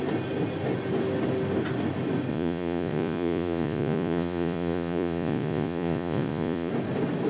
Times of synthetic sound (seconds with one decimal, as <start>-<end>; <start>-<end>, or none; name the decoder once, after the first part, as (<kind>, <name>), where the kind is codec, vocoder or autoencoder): 2.3-6.7 (vocoder, Vocos)

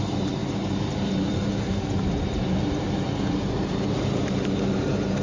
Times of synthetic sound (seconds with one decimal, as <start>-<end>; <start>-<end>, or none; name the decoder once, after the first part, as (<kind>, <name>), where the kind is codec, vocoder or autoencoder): 0.0-5.2 (vocoder, BigVGAN v2)